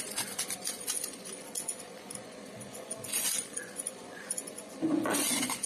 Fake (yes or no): yes